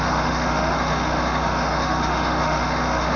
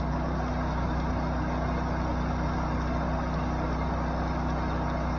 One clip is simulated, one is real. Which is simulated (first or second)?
first